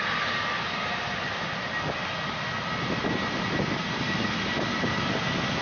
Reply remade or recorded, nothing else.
recorded